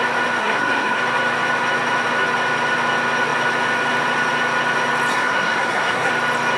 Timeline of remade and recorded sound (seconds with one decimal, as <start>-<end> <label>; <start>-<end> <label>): 0.0-0.4 recorded; 0.4-1.0 remade; 1.0-5.1 recorded; 5.1-6.1 remade; 6.1-6.6 recorded